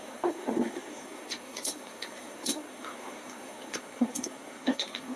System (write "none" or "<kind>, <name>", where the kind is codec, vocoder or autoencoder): codec, SNAC